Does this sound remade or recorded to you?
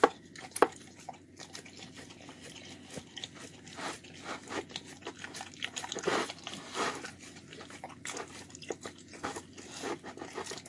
recorded